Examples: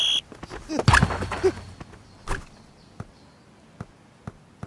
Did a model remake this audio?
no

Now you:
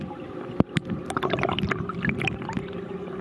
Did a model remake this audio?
no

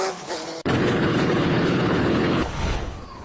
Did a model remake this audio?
yes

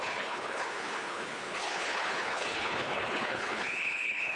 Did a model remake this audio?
yes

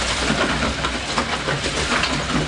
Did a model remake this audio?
no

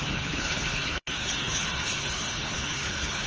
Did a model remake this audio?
yes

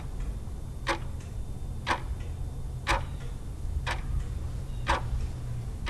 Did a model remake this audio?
no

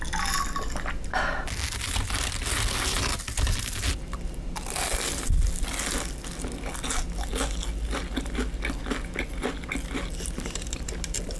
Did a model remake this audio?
no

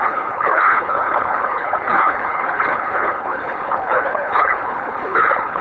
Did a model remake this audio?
yes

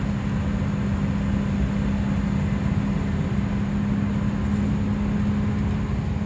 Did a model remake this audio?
no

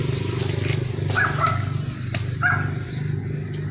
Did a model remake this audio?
no